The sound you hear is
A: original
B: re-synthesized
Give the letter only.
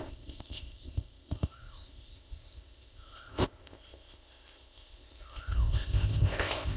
B